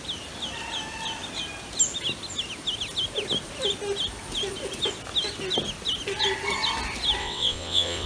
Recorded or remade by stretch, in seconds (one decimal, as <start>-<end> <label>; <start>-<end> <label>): 0.0-7.2 recorded; 7.2-8.1 remade

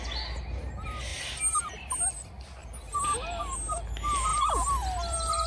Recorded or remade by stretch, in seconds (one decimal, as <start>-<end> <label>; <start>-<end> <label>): 0.0-4.3 recorded; 4.3-5.5 remade